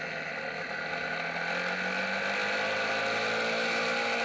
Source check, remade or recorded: recorded